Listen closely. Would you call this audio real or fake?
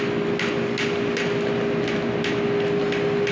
real